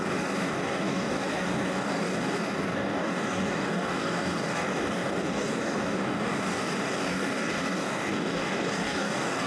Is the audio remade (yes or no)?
yes